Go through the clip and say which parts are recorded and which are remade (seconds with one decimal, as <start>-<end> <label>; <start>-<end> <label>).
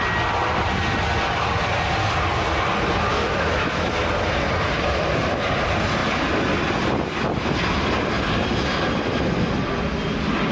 0.0-3.1 recorded; 3.1-3.9 remade; 3.9-10.5 recorded